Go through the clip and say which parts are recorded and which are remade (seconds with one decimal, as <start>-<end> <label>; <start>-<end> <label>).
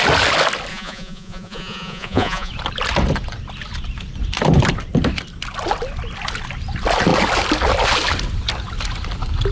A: 0.0-0.7 recorded; 0.7-2.5 remade; 2.5-9.5 recorded